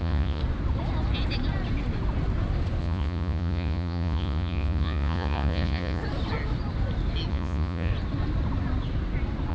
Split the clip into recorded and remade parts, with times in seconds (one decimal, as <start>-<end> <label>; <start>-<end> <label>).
0.0-0.4 remade; 0.4-2.8 recorded; 2.8-6.0 remade; 6.0-7.3 recorded; 7.3-7.9 remade; 7.9-9.5 recorded